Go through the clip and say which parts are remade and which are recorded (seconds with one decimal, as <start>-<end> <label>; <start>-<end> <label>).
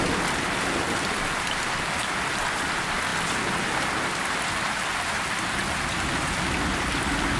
0.0-7.4 recorded